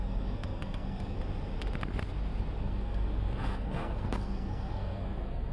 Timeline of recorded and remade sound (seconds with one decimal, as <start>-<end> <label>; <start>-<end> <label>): 0.0-1.2 remade; 1.2-2.6 recorded; 2.6-5.5 remade